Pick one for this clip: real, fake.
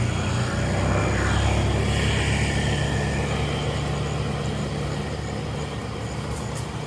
real